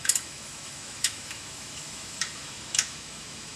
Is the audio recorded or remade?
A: remade